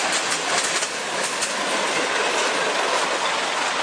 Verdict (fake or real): real